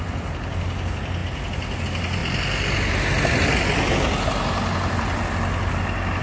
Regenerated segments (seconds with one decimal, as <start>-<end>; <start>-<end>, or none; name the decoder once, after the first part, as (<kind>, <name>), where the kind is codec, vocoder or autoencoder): none